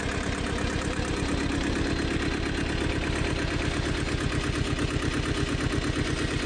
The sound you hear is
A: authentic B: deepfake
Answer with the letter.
A